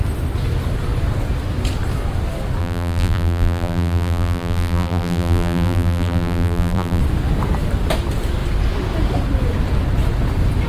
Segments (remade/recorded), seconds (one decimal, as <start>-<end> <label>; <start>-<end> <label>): 0.0-2.6 recorded; 2.6-7.0 remade; 7.0-10.7 recorded